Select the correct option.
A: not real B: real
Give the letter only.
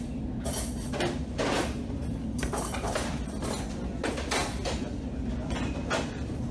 B